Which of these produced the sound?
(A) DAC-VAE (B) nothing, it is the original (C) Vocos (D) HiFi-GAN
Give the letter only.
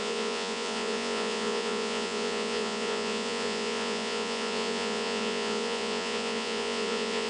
C